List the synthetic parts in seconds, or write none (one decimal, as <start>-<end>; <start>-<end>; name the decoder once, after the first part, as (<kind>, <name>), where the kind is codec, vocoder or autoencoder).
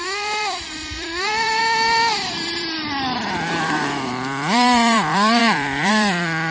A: 0.0-1.6 (vocoder, BigVGAN v2); 2.1-6.5